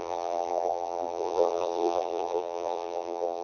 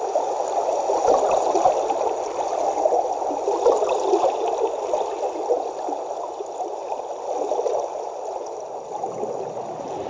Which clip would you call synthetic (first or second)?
first